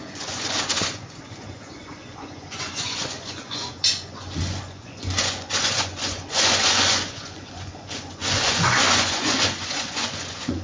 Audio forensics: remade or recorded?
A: remade